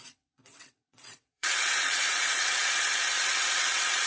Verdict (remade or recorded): remade